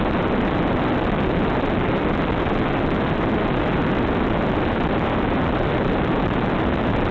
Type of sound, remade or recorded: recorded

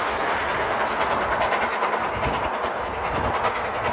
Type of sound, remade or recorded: recorded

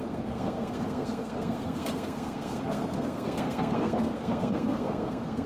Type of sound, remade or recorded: remade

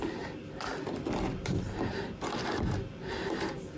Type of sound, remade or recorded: recorded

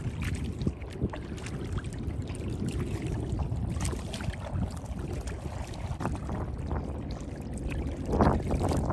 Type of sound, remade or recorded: recorded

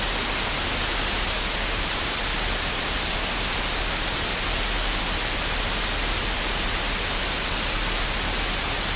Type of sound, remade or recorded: recorded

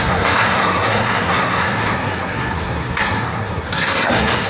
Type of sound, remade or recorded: remade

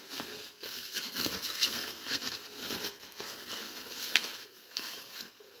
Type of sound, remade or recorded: remade